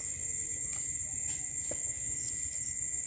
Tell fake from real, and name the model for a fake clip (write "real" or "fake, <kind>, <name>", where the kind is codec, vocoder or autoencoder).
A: real